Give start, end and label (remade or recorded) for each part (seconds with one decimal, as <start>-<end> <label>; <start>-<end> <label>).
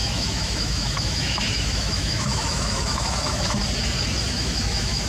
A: 0.0-3.6 remade; 3.6-4.3 recorded; 4.3-5.1 remade